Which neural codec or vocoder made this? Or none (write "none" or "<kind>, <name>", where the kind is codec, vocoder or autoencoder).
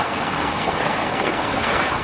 codec, SNAC